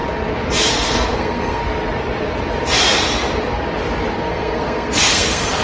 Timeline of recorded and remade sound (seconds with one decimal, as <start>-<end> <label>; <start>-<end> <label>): 0.0-0.7 recorded; 0.7-1.6 remade; 1.6-4.1 recorded; 4.1-5.6 remade